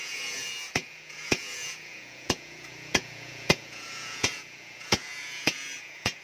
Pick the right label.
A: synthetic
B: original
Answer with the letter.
A